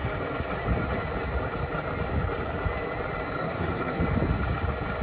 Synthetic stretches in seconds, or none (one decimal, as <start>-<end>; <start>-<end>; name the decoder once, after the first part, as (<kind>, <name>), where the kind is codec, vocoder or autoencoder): 3.4-4.0 (codec, SNAC)